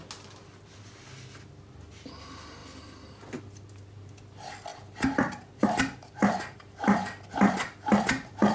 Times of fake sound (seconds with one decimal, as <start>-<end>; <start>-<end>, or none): none